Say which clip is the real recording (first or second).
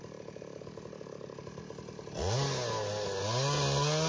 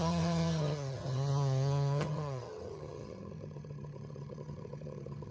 first